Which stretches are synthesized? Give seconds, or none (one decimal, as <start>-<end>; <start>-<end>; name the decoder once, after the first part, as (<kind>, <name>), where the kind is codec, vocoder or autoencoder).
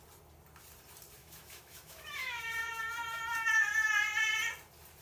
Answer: 1.2-2.9 (autoencoder, DAC-VAE)